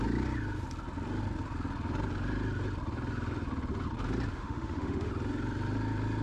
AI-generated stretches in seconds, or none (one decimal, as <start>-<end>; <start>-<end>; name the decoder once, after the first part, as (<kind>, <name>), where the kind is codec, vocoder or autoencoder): 4.3-5.1 (autoencoder, DAC-VAE)